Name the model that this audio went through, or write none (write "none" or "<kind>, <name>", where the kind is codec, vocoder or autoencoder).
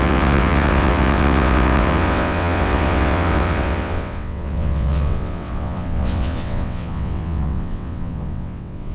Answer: vocoder, WaveNeXt